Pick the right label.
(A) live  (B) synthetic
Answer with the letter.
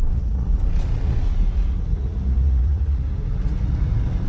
B